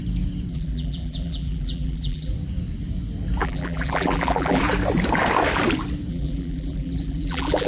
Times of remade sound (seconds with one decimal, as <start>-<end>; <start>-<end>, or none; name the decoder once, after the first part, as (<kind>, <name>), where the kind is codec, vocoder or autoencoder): 0.5-2.3 (vocoder, BigVGAN v2); 3.4-4.6; 6.1-7.7